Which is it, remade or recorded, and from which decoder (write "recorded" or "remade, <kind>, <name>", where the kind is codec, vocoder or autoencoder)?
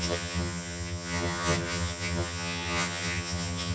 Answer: remade, vocoder, HiFi-GAN